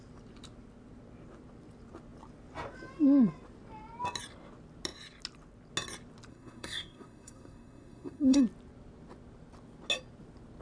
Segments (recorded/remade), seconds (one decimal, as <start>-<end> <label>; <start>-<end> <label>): 0.0-6.3 recorded; 6.3-8.4 remade; 8.4-10.6 recorded